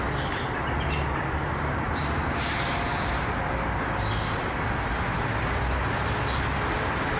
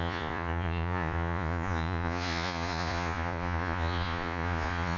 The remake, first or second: second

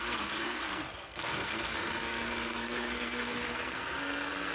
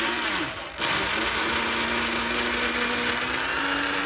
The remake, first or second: first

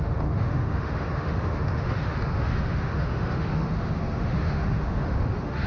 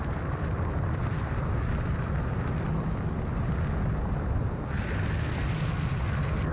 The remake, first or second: first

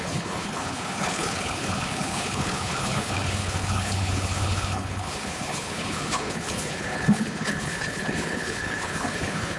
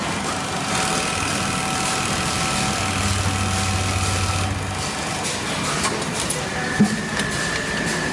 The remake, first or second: first